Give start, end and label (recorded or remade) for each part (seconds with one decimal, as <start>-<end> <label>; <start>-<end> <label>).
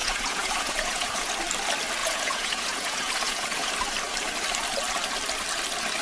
0.0-1.3 remade; 1.3-2.0 recorded; 2.0-3.7 remade; 3.7-6.0 recorded